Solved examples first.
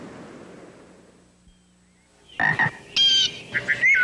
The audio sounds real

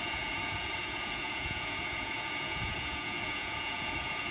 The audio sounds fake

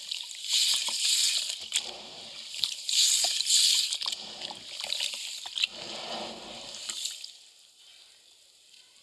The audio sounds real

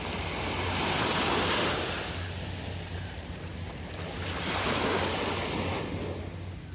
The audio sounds real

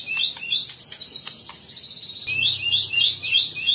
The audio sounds real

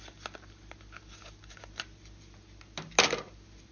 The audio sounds real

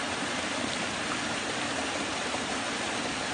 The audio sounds real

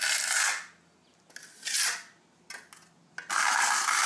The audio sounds real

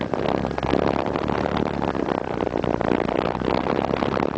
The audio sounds real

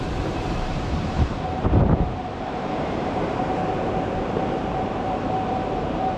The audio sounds fake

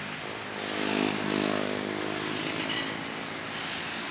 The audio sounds real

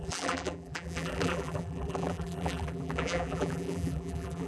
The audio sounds fake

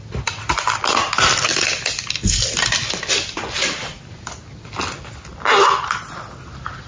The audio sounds real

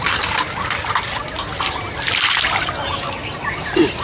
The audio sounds real